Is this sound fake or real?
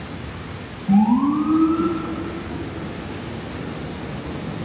real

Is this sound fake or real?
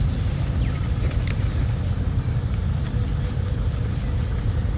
real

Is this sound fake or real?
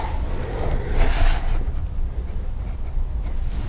real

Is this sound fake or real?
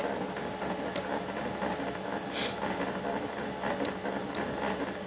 real